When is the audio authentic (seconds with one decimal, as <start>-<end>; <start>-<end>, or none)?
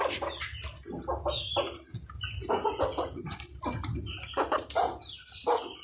0.0-5.8